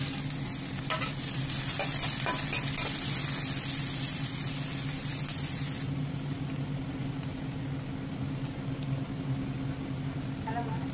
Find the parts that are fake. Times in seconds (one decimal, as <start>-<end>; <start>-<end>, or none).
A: none